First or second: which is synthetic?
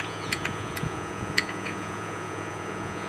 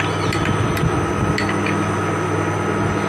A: first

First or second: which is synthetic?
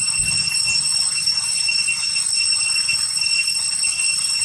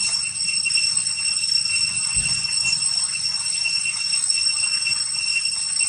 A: second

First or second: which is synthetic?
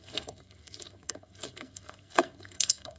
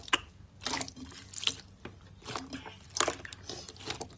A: first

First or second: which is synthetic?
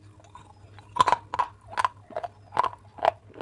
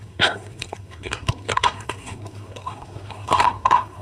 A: second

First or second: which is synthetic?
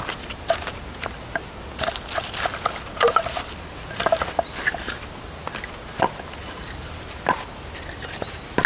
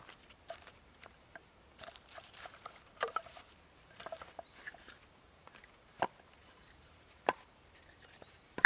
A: second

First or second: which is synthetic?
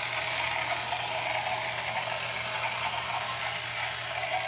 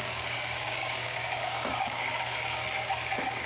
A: second